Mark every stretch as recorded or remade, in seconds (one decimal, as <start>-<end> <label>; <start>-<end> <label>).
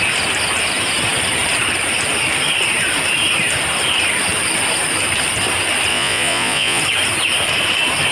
0.0-5.9 recorded; 5.9-6.8 remade; 6.8-8.1 recorded